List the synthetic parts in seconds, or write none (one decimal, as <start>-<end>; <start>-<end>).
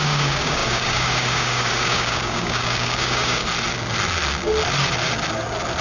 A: 0.0-3.4